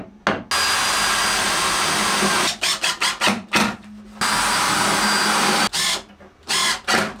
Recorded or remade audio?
recorded